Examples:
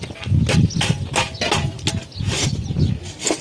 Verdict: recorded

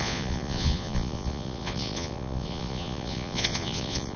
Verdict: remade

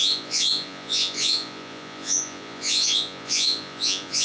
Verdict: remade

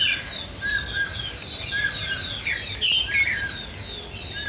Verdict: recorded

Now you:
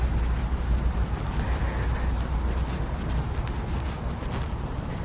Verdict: recorded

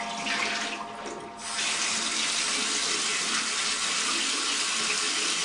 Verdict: recorded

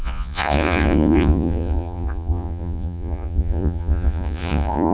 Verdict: remade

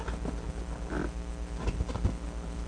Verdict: recorded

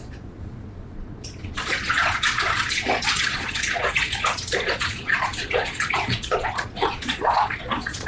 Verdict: remade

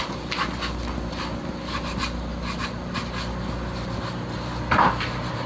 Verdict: recorded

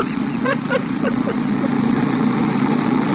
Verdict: remade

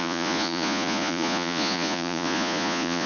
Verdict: remade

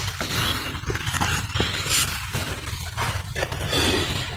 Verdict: recorded